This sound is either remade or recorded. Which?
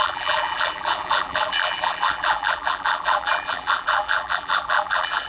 remade